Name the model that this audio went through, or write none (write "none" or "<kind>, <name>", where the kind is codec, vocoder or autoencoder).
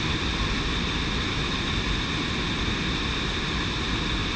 none